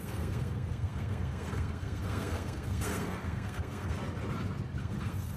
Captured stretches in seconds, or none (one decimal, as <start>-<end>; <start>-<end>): 4.0-4.8

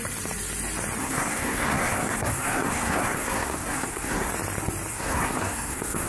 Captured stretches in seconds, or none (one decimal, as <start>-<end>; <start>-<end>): 0.0-1.0; 4.3-4.9

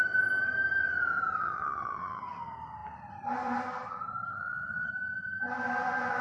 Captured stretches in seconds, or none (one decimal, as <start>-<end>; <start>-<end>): 0.0-1.4; 2.2-4.3; 4.9-6.2

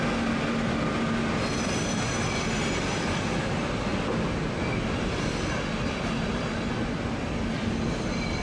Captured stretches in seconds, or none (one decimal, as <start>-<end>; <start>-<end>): 0.0-8.4

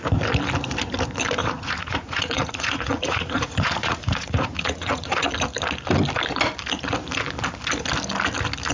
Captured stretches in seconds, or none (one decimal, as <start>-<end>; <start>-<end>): 0.0-1.4; 5.3-8.7

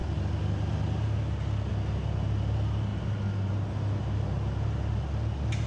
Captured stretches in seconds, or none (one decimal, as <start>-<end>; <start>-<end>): 0.0-5.7

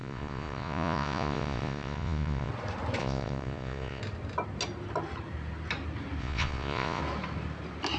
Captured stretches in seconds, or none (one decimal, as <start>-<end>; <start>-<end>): 2.5-3.0; 4.0-6.2; 7.0-8.0